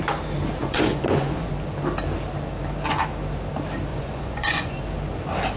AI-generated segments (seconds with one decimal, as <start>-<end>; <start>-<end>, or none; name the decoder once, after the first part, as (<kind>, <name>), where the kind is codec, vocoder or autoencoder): 0.6-1.5 (vocoder, Vocos); 3.9-4.8